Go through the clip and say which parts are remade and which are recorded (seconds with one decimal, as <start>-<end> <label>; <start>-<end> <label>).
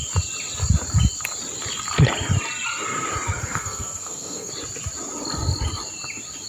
0.0-3.4 recorded; 3.4-4.5 remade; 4.5-6.5 recorded